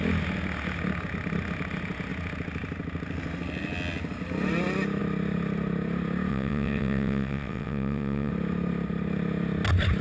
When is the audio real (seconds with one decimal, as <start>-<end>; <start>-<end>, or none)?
0.0-6.3; 8.3-10.0